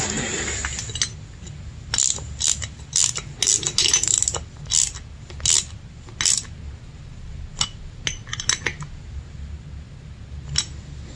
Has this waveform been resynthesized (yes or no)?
no